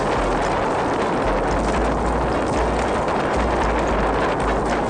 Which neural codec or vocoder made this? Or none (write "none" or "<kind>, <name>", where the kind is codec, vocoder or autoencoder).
none